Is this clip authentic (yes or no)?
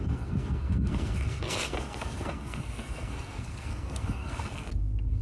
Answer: no